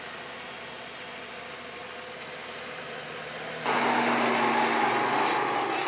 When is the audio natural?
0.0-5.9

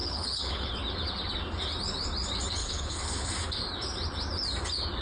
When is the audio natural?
0.7-2.6; 3.3-5.0

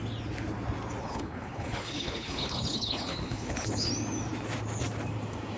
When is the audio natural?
0.0-1.0; 3.9-5.6

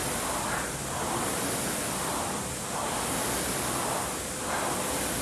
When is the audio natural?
0.0-5.2

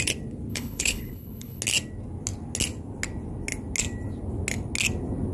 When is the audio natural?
0.0-0.5; 1.6-5.3

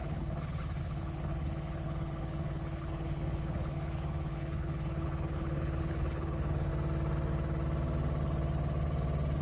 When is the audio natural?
6.7-9.4

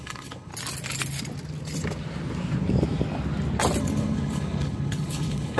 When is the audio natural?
0.5-3.8